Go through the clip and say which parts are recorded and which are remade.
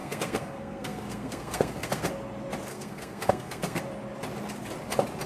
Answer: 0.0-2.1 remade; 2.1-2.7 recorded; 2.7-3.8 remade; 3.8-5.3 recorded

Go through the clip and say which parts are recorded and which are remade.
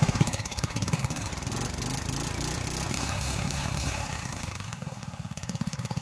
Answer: 0.0-1.3 remade; 1.3-2.9 recorded; 2.9-6.0 remade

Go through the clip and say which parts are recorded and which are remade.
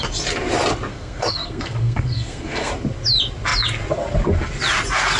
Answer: 0.0-0.9 recorded; 0.9-2.7 remade; 2.7-5.2 recorded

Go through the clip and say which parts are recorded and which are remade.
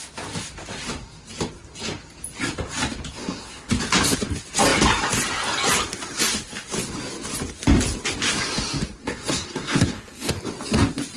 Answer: 0.0-3.2 recorded; 3.2-3.8 remade; 3.8-9.0 recorded; 9.0-10.3 remade; 10.3-11.2 recorded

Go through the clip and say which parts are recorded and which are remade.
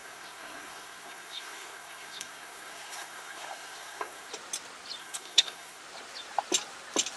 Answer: 0.0-4.3 remade; 4.3-5.0 recorded; 5.0-5.8 remade; 5.8-7.2 recorded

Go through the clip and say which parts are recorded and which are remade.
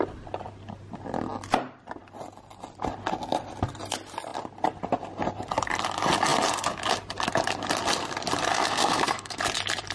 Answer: 0.0-8.5 recorded; 8.5-9.4 remade; 9.4-9.9 recorded